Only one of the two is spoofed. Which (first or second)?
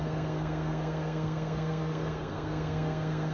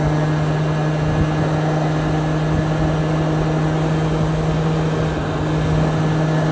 first